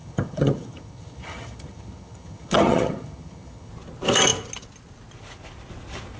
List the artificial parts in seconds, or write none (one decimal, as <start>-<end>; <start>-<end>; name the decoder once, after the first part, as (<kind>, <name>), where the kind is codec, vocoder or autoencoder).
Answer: 0.0-3.7 (vocoder, HiFi-GAN)